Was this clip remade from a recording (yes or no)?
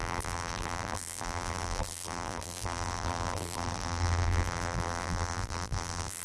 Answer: yes